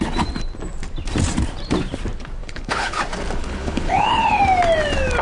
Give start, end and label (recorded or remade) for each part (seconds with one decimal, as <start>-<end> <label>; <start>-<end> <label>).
0.0-2.4 recorded; 2.4-3.0 remade; 3.0-3.4 recorded; 3.4-4.4 remade; 4.4-5.2 recorded